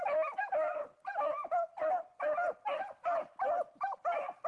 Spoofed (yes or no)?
no